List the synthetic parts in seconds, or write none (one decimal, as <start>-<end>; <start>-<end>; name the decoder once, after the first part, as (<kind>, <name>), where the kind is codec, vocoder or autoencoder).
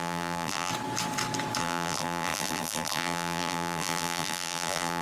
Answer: 0.0-0.7 (vocoder, BigVGAN v2); 1.6-5.0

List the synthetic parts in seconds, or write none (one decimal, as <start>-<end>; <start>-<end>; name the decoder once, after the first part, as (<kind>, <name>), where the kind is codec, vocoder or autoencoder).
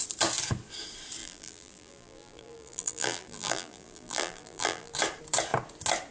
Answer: 1.2-4.9 (vocoder, BigVGAN v2)